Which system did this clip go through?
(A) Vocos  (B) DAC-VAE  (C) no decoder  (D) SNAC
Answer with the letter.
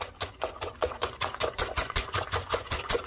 A